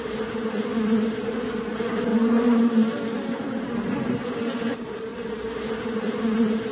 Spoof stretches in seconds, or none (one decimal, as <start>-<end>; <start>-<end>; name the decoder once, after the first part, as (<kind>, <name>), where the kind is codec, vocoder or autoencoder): 0.0-0.7 (vocoder, BigVGAN v2); 1.2-2.1; 2.6-5.1; 6.0-6.7